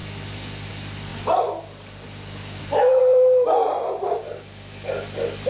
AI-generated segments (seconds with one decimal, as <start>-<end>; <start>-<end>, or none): 3.0-4.2

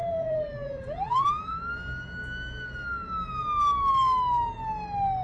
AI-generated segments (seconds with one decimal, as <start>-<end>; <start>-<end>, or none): 0.0-1.6

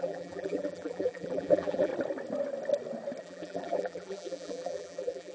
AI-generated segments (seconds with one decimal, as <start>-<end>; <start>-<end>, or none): 0.0-1.9; 3.2-5.3

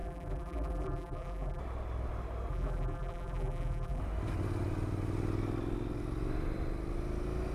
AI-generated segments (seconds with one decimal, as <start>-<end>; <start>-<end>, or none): 0.0-1.6; 2.5-4.0

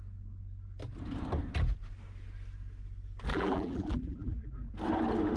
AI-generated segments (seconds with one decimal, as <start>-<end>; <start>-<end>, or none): 3.3-4.7

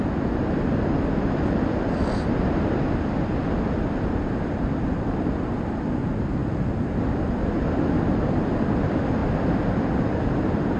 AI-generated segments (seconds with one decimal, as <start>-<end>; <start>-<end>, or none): none

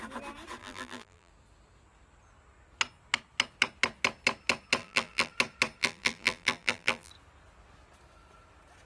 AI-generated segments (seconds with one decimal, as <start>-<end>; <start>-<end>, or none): 0.6-1.3; 4.8-5.3; 5.8-7.1

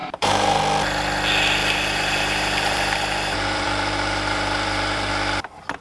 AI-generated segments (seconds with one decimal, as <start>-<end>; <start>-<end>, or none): 0.0-0.6; 1.6-5.1